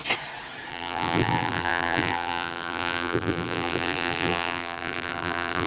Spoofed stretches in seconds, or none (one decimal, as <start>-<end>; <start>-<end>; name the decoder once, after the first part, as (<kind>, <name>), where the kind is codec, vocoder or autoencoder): 0.7-5.7 (vocoder, BigVGAN v2)